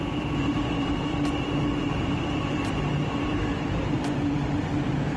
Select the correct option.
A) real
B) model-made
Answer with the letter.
B